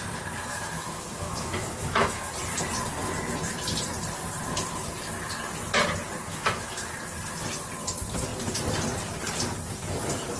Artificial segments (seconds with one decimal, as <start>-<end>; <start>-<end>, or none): 0.5-2.3; 6.3-6.9